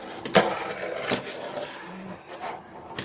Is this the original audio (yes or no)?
no